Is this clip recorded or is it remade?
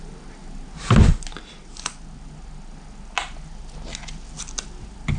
recorded